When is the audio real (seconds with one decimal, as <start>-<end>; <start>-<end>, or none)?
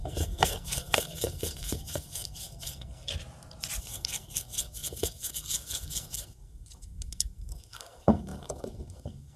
3.1-3.8